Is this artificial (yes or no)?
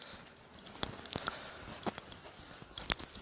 no